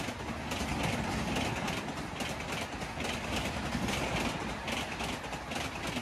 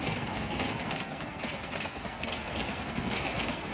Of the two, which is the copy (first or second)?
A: second